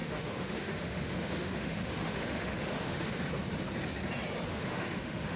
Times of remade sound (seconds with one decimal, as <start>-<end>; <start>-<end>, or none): 0.0-3.2; 4.5-5.4